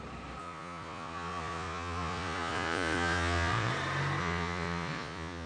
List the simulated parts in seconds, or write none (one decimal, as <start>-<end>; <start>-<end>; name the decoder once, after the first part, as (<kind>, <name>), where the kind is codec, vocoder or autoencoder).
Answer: 0.4-3.7 (vocoder, Vocos); 4.2-5.5